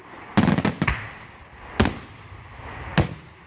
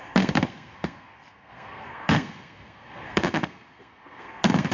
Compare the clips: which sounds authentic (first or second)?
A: first